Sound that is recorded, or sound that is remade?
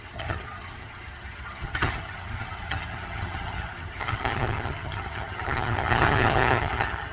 remade